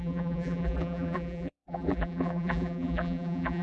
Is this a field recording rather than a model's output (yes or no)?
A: no